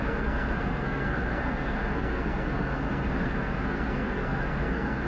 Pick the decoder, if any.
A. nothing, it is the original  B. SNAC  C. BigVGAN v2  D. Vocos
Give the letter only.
B